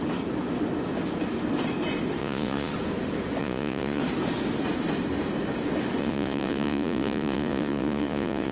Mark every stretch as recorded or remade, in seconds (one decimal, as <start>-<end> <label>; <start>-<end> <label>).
0.0-2.2 recorded; 2.2-2.7 remade; 2.7-3.4 recorded; 3.4-4.0 remade; 4.0-6.0 recorded; 6.0-8.5 remade